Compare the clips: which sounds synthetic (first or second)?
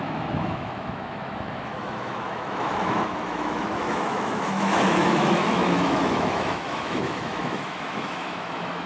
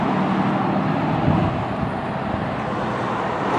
first